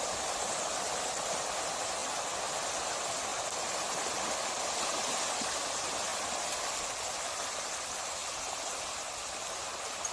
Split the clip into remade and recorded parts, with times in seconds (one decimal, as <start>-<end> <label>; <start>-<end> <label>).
0.0-2.0 remade; 2.0-2.8 recorded; 2.8-3.3 remade; 3.3-5.4 recorded; 5.4-8.2 remade; 8.2-9.1 recorded; 9.1-10.1 remade